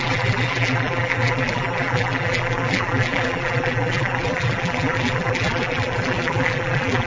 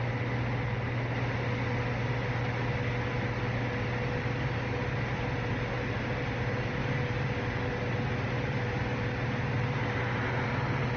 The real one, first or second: second